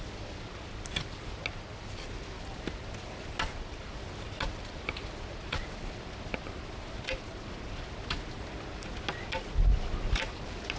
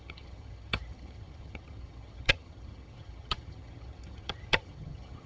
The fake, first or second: second